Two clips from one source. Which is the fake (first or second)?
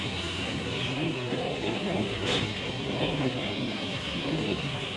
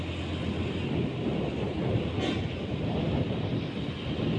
first